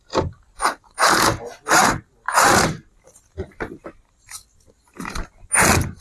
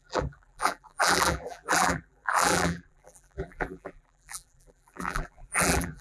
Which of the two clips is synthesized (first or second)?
second